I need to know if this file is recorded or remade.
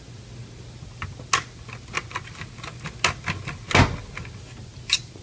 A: recorded